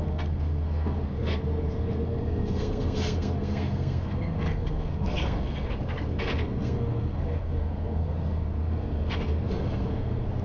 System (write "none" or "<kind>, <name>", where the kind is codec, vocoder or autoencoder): codec, SNAC